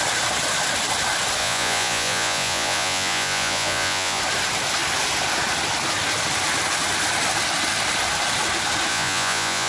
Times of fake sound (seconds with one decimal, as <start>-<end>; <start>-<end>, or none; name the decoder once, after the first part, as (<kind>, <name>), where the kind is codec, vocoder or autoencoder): 1.4-4.2 (vocoder, Vocos); 8.9-9.7